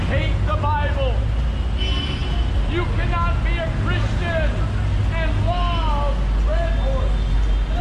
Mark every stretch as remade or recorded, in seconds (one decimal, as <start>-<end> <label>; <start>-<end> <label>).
0.0-7.8 recorded